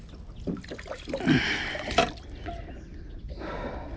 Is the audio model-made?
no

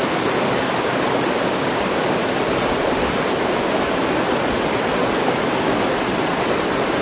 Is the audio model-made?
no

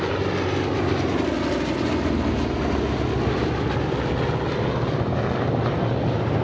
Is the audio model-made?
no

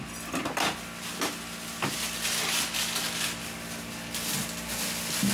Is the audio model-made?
no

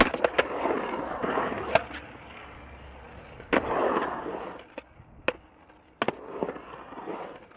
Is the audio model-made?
no